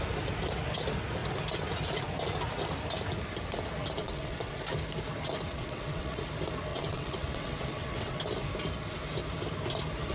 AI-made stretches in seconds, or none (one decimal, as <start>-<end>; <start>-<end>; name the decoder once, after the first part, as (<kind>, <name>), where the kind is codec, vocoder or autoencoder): 4.0-4.6 (vocoder, WaveNeXt); 5.5-6.2; 6.7-8.2